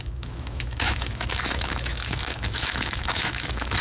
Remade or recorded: remade